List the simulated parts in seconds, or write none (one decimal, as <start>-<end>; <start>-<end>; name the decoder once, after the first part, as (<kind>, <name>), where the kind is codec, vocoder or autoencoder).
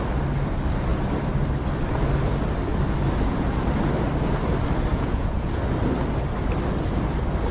4.9-5.6 (vocoder, Vocos)